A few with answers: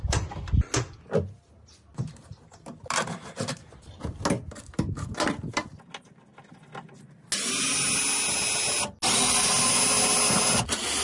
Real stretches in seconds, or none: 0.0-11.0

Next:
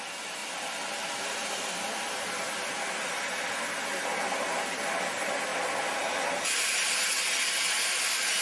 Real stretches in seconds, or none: 0.0-8.4